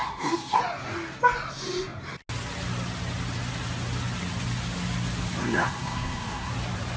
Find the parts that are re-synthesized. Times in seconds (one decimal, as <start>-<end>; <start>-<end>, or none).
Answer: 0.0-0.6; 5.4-6.5